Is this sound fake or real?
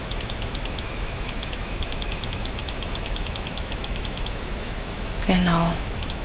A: fake